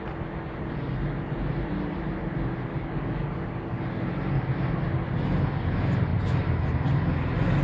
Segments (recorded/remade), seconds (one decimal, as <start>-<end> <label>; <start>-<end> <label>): 0.0-2.7 recorded; 2.7-3.9 remade; 3.9-7.6 recorded

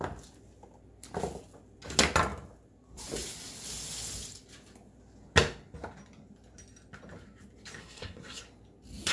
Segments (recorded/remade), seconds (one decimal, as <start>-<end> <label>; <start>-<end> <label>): 0.0-7.8 recorded; 7.8-8.4 remade; 8.4-9.1 recorded

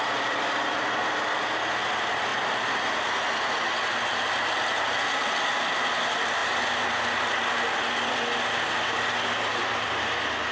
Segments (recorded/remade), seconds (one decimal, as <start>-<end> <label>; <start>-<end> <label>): 0.0-10.5 recorded